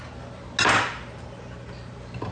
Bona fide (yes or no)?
yes